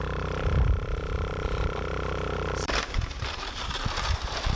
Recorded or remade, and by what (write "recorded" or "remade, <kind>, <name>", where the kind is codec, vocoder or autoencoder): remade, vocoder, BigVGAN v2